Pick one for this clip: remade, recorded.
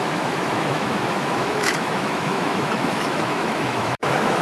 remade